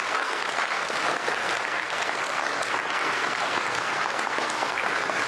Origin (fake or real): fake